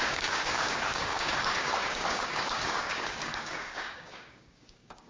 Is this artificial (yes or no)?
yes